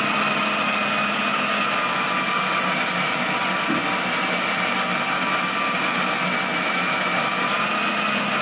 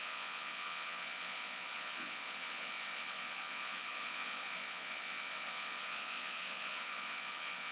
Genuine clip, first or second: first